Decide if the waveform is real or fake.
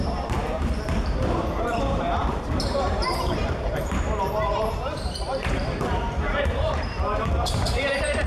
fake